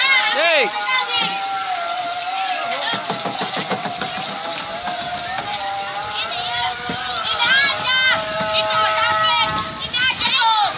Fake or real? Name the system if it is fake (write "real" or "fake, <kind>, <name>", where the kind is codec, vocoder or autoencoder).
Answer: real